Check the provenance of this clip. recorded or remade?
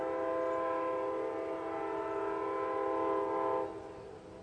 recorded